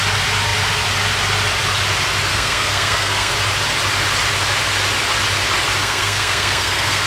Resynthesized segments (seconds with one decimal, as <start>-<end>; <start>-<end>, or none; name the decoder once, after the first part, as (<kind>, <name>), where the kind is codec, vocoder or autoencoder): 2.3-3.3 (codec, SNAC); 5.8-7.1